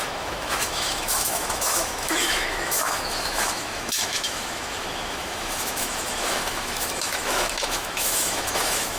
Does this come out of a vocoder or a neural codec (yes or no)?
yes